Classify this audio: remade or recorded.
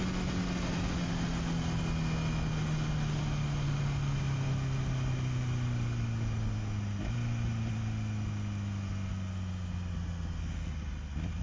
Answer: recorded